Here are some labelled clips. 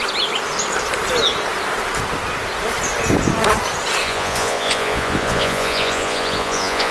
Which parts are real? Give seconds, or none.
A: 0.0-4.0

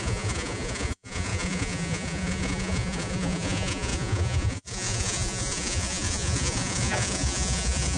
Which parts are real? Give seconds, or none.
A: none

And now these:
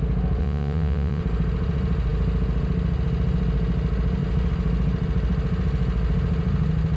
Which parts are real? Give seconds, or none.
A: 0.0-0.4; 1.2-7.0

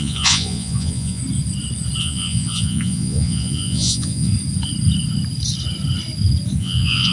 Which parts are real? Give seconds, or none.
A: 1.2-2.0; 4.3-6.6

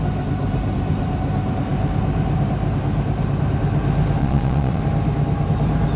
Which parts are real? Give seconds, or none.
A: 0.0-4.2; 4.8-6.0